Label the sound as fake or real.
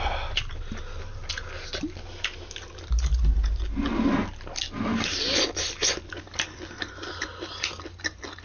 real